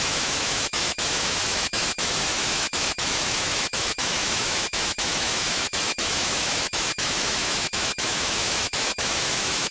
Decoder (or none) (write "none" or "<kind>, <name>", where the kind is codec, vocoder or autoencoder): autoencoder, DAC-VAE